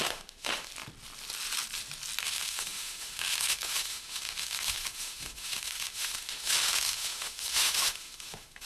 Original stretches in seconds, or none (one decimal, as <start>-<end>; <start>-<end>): 0.7-2.2